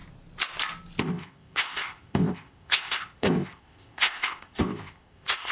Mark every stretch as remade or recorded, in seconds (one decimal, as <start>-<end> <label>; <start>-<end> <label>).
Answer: 0.0-1.0 recorded; 1.0-5.5 remade